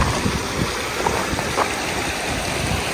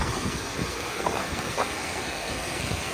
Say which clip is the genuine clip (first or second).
first